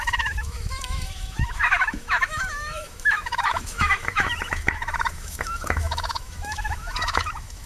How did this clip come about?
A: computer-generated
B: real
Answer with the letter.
A